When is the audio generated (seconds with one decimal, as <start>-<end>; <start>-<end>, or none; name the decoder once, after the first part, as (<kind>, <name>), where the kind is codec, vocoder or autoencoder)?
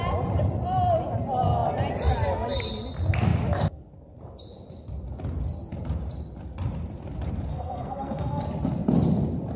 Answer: 7.5-8.4 (codec, SNAC)